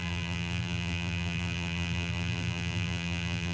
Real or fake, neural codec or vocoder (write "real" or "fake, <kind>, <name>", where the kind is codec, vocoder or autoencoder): fake, vocoder, BigVGAN v2